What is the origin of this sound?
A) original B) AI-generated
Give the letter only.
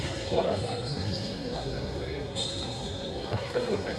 B